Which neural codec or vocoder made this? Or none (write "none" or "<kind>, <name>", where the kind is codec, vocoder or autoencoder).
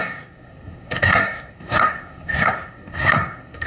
codec, SNAC